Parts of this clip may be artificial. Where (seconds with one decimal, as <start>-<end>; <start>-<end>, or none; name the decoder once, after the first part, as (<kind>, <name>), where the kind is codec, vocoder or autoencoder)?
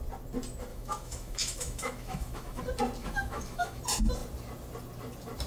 0.7-2.6 (autoencoder, DAC-VAE); 3.0-3.8